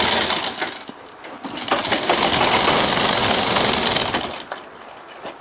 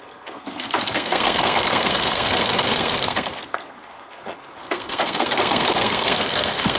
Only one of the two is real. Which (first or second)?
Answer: first